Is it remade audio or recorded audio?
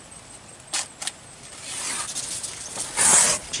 recorded